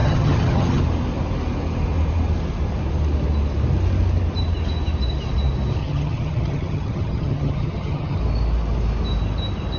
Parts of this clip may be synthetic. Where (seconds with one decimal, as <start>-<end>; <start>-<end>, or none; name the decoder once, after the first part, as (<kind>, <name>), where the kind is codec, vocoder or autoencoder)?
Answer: 0.0-0.8 (vocoder, HiFi-GAN); 5.8-8.2